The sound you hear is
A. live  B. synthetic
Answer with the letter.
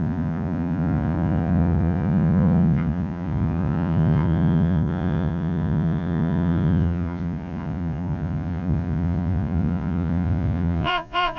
B